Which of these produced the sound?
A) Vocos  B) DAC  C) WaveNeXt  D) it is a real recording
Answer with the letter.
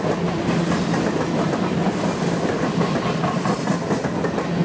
D